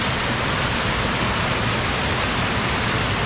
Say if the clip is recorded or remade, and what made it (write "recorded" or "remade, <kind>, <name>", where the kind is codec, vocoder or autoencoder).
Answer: recorded